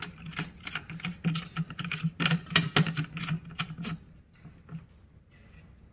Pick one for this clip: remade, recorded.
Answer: recorded